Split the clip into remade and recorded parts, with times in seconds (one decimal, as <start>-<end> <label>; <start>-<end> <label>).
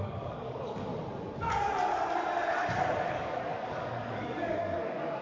0.0-0.9 remade; 0.9-1.5 recorded; 1.5-1.9 remade; 1.9-3.1 recorded; 3.1-5.2 remade